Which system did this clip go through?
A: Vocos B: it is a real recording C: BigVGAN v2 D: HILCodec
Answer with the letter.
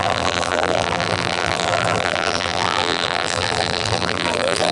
C